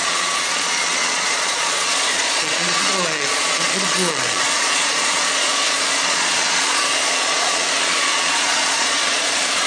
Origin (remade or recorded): remade